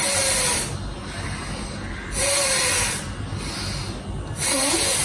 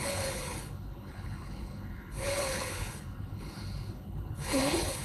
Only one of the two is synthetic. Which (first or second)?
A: second